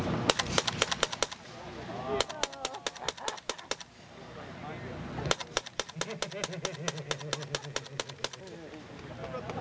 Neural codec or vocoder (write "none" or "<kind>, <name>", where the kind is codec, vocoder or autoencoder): none